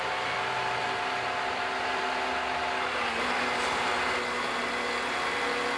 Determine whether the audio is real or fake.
real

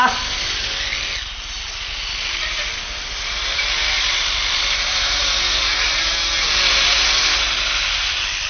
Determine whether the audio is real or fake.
real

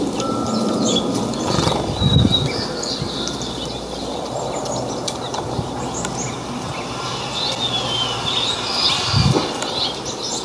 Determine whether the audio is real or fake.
real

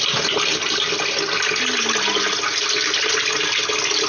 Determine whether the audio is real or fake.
real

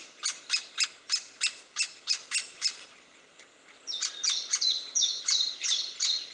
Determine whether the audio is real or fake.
fake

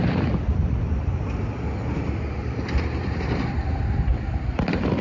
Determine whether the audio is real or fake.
fake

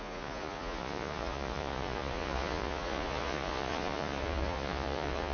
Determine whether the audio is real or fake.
fake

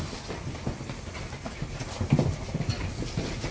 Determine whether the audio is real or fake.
real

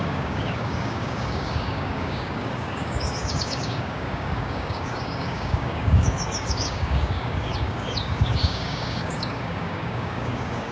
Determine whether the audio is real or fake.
fake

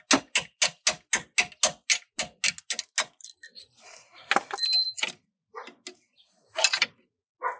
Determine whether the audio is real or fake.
real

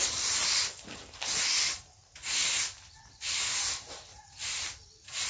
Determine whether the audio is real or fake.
real